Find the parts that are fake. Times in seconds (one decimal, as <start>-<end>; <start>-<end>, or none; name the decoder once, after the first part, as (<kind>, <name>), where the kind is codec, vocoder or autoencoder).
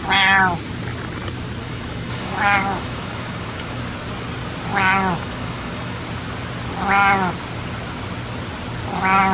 1.6-3.8 (autoencoder, DAC-VAE); 4.7-6.0